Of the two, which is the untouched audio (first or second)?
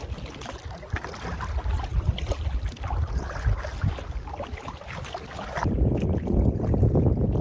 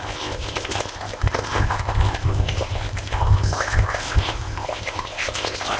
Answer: first